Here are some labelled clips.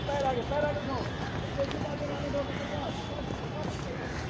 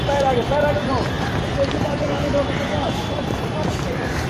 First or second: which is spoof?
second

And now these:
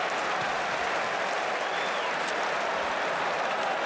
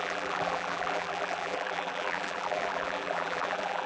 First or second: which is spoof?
second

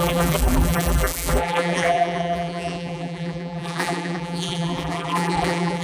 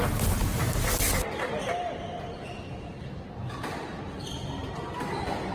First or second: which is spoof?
first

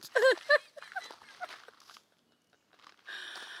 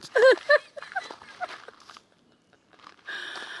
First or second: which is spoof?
second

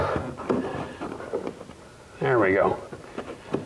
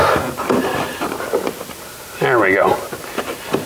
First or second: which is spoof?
second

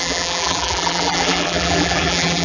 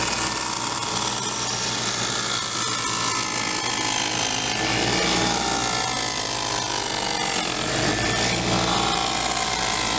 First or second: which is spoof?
first